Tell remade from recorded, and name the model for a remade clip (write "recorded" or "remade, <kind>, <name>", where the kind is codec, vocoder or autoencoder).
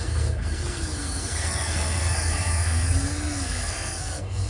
remade, codec, SNAC